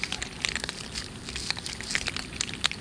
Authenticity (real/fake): real